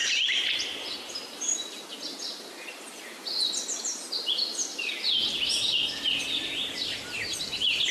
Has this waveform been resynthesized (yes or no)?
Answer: no